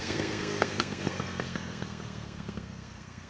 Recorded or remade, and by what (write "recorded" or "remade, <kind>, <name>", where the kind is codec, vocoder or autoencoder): remade, codec, SNAC